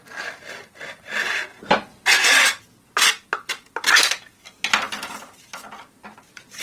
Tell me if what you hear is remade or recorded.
recorded